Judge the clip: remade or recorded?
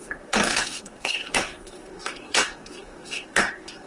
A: remade